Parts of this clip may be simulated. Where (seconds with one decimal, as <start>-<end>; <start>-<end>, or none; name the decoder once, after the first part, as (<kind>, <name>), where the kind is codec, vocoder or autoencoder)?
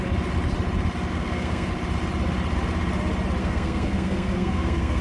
1.1-1.7 (codec, SNAC); 3.4-5.0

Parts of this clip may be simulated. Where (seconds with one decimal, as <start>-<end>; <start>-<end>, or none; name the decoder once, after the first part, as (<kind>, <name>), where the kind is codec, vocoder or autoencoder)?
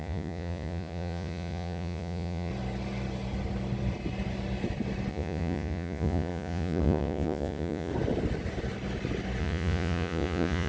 0.0-2.5 (vocoder, Vocos); 5.1-7.9; 9.4-10.7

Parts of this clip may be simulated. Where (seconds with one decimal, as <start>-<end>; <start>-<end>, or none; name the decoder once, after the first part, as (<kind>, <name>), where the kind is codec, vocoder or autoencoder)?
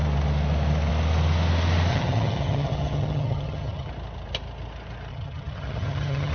1.9-3.9 (vocoder, HiFi-GAN); 5.1-6.3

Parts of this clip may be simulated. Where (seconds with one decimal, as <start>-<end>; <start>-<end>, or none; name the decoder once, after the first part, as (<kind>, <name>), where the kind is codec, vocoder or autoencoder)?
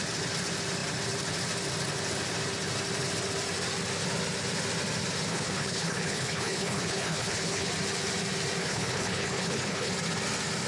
5.3-7.7 (codec, HILCodec); 8.6-9.9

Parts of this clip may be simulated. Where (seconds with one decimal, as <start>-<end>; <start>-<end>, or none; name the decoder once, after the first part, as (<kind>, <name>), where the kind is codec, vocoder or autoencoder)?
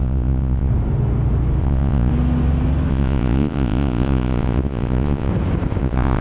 0.0-0.7 (vocoder, Vocos); 1.6-2.1; 2.9-5.3; 5.8-6.2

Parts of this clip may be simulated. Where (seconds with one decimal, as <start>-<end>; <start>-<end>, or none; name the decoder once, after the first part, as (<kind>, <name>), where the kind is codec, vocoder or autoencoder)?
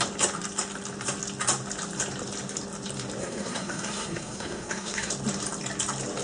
3.2-5.1 (codec, SNAC)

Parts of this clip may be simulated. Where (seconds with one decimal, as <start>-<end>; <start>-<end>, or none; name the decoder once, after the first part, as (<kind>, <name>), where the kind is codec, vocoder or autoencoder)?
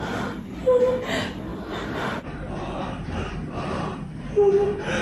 0.0-0.5 (vocoder, BigVGAN v2); 1.1-5.0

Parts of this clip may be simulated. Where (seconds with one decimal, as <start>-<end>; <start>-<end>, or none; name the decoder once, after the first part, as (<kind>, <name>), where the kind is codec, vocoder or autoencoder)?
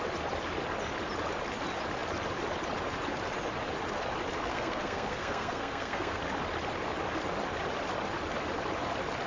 4.5-6.2 (codec, SNAC)